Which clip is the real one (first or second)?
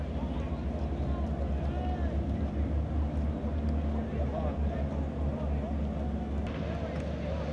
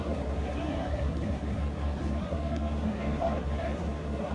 first